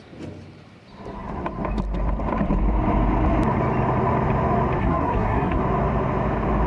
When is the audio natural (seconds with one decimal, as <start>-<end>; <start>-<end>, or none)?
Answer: 0.0-4.8; 5.6-6.7